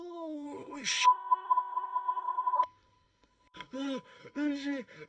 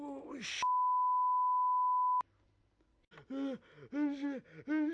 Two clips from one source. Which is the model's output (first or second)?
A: first